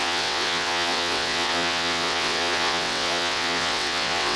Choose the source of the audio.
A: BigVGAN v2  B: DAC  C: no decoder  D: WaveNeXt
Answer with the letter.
D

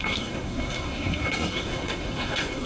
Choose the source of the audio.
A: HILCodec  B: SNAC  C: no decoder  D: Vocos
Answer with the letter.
B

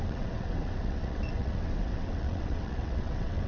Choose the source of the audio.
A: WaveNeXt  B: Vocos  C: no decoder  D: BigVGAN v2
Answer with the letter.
A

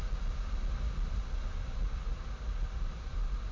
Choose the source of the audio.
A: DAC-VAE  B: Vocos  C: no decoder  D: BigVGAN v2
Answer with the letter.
C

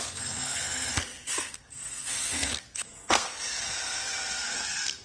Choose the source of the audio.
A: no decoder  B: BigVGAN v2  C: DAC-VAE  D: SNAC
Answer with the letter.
D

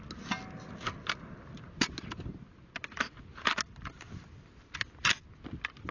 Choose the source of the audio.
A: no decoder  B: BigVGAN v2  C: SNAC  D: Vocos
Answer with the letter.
A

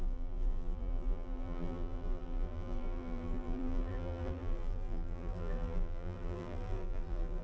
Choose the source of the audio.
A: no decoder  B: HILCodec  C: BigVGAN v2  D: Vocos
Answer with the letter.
C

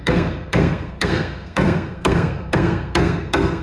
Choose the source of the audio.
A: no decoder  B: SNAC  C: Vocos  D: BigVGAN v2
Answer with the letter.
B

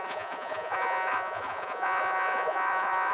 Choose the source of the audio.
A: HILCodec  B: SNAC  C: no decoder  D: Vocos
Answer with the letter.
D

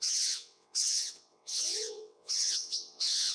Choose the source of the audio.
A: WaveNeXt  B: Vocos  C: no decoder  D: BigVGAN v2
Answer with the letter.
A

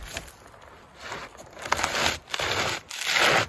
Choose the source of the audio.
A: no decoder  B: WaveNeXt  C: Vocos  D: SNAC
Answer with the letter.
A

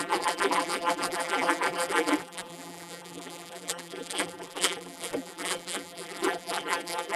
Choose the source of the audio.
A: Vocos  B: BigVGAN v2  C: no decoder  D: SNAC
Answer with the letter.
B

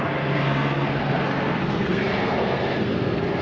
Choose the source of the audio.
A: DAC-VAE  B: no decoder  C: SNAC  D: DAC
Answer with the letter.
C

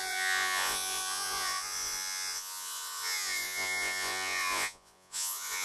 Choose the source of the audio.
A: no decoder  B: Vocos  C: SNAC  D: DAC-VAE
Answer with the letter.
B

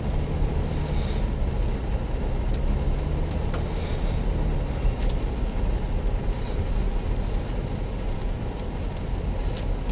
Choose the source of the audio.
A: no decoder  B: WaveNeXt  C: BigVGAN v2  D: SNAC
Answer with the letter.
A